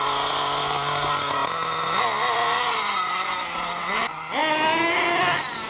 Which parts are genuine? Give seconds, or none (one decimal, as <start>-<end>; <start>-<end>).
0.0-5.7